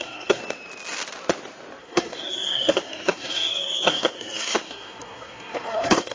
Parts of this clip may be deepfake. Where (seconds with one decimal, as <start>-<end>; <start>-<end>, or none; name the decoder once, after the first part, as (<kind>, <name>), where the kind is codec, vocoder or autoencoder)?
0.0-0.4 (codec, SNAC); 1.8-6.1